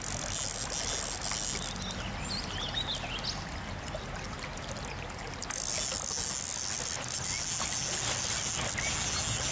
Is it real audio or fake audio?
real